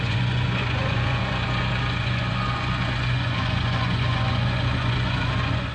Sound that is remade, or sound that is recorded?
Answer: remade